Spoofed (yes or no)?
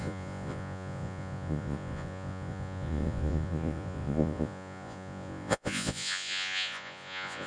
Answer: yes